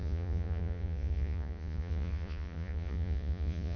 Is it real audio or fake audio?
fake